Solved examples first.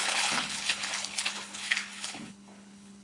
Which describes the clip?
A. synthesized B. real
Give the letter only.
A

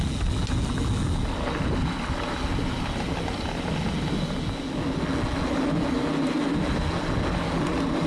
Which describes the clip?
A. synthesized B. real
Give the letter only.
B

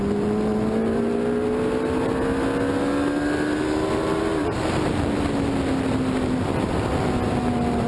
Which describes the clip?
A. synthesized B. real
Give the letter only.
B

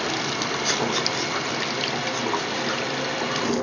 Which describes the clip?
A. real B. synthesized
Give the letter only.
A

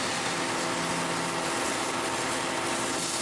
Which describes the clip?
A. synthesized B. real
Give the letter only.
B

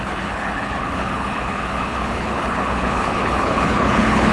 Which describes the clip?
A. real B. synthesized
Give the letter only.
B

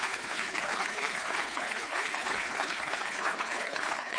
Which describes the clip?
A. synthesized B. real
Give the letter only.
A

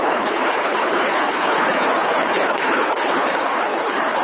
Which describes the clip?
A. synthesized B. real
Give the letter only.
A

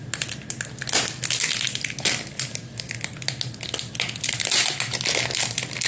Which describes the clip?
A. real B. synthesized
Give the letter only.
A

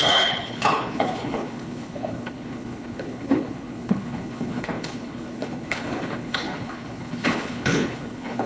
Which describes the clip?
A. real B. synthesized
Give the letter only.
B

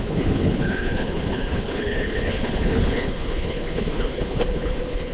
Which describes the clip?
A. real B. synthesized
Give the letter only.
B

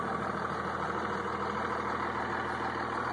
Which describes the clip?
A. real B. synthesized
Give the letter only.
A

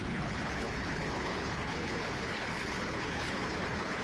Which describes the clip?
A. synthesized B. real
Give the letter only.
A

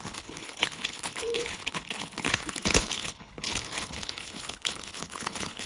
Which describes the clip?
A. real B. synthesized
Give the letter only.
B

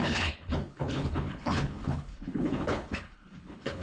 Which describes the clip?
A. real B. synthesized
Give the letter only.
B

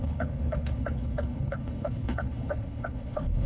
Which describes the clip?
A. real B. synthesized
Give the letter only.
B